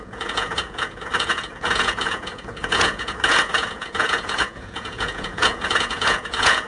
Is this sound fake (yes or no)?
yes